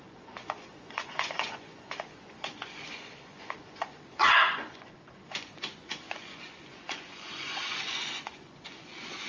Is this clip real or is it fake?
fake